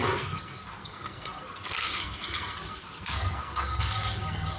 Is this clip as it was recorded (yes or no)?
no